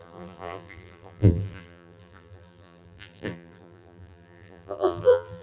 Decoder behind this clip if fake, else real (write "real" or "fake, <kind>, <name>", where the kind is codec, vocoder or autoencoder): fake, vocoder, BigVGAN v2